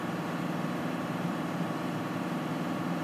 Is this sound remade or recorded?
recorded